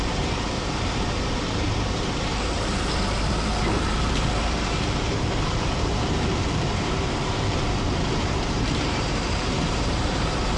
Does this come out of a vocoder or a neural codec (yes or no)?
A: yes